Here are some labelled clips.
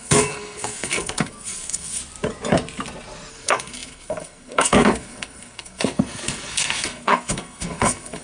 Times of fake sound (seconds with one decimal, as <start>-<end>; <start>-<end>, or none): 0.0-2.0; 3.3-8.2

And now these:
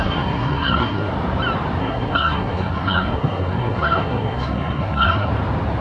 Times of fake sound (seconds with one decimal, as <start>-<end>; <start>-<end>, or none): 0.0-1.1; 1.8-5.3

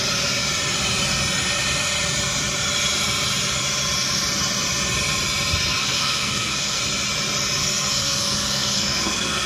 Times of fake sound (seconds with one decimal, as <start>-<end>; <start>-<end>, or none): 5.8-6.8; 7.6-9.5

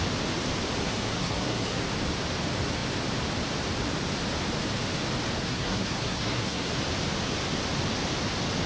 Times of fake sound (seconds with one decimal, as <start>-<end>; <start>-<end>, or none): 0.8-1.8; 5.4-6.7